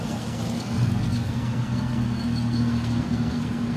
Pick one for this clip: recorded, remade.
remade